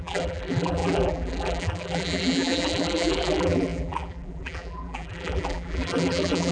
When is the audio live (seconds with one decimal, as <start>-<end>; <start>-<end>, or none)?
none